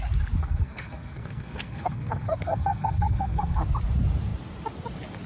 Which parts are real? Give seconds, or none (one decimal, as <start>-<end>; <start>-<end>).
0.0-0.4; 3.6-5.3